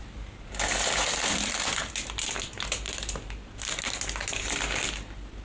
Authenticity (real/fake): real